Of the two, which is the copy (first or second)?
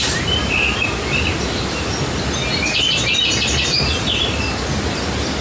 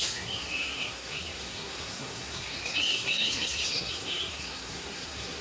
second